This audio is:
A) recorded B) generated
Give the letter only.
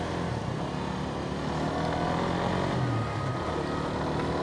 A